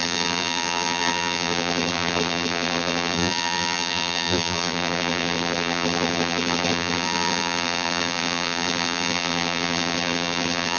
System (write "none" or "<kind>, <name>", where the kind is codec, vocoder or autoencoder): vocoder, BigVGAN v2